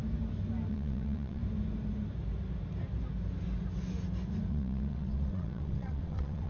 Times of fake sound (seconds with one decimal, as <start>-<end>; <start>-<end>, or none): 0.7-1.4; 4.5-6.5